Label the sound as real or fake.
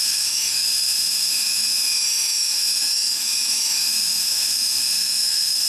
fake